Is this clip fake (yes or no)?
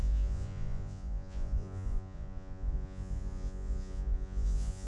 yes